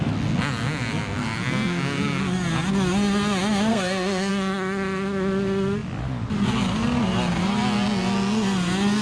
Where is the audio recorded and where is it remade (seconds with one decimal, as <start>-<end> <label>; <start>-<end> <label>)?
0.0-1.2 recorded; 1.2-2.2 remade; 2.2-3.7 recorded; 3.7-4.3 remade; 4.3-9.0 recorded